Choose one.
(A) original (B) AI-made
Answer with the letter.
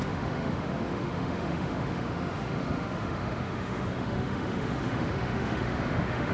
B